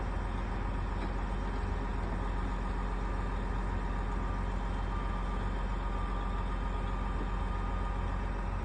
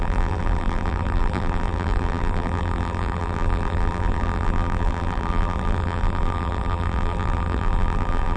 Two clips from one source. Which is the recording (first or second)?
first